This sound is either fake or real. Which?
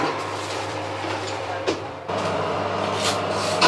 fake